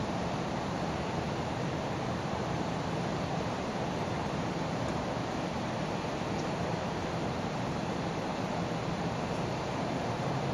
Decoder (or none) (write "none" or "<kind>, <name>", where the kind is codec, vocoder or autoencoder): vocoder, BigVGAN v2